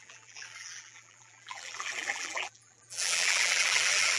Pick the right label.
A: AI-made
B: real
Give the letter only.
A